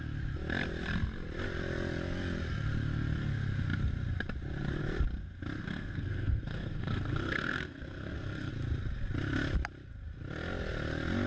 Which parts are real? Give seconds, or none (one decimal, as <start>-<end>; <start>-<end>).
0.0-5.6; 8.5-11.3